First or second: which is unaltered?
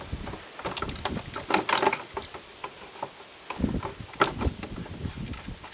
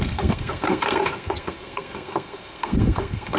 first